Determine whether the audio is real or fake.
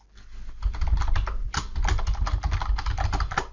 real